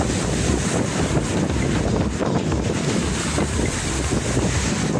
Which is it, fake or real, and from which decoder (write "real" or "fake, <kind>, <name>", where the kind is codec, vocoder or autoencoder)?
real